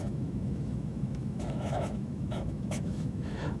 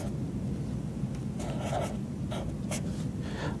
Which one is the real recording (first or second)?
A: second